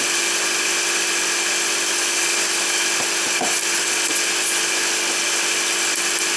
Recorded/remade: recorded